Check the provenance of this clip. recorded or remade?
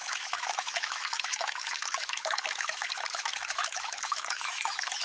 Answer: remade